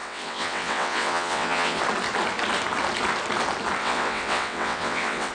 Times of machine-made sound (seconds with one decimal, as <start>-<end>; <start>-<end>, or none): 0.0-1.8; 3.8-5.3